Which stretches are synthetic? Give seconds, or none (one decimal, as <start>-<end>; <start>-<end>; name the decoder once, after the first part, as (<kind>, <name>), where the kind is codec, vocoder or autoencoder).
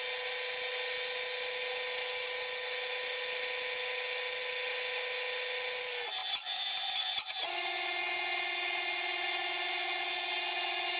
none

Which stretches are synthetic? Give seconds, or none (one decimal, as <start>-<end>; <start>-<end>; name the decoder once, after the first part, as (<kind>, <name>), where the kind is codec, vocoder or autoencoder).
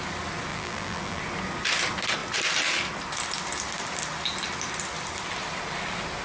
0.5-1.2 (vocoder, BigVGAN v2)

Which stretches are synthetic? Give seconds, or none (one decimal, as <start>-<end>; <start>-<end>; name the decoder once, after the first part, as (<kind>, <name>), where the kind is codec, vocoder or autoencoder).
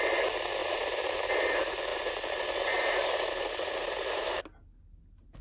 0.6-1.3 (vocoder, BigVGAN v2); 1.9-4.4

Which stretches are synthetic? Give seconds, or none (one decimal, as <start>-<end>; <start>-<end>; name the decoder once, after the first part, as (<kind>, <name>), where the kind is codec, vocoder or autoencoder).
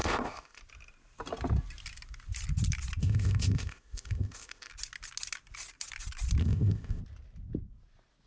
0.0-0.6 (codec, ZipCodec); 3.0-4.7; 6.4-7.0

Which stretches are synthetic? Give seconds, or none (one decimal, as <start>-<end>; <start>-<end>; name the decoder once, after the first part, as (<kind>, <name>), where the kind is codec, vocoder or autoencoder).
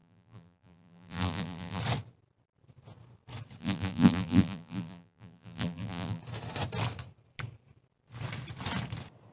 0.0-1.8 (vocoder, BigVGAN v2); 3.6-6.2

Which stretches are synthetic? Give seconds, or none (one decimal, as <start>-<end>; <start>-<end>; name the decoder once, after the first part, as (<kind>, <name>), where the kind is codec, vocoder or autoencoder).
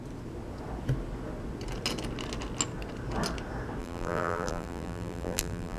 3.8-5.8 (vocoder, BigVGAN v2)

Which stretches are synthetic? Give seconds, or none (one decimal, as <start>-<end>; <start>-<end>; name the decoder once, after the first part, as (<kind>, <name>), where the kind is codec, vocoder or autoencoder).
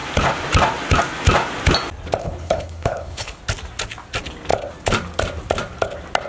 2.2-3.4 (codec, HILCodec)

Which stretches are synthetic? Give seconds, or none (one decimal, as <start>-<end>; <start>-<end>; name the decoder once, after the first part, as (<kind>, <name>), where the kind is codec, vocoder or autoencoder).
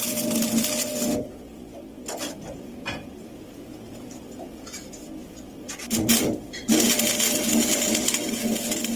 none